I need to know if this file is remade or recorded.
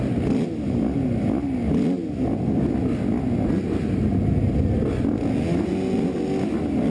recorded